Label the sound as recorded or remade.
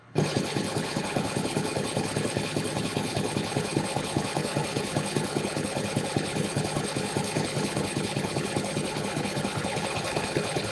remade